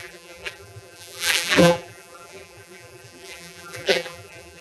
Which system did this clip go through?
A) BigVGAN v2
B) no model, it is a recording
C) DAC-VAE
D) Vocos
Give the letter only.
A